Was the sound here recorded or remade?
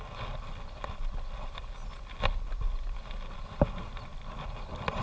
recorded